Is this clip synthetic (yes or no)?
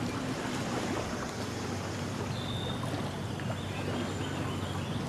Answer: no